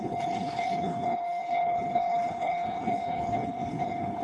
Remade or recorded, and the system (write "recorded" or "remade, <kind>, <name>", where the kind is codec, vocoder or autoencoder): remade, codec, HILCodec